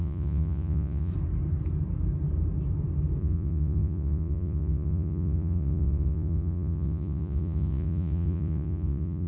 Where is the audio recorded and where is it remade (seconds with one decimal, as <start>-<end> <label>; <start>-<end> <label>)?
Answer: 0.0-1.1 remade; 1.1-3.2 recorded; 3.2-9.3 remade